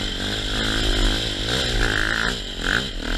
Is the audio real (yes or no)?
yes